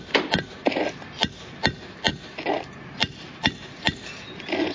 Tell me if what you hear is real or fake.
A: real